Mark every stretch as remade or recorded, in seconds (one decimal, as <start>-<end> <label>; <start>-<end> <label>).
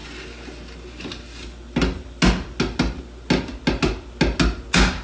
0.0-5.0 recorded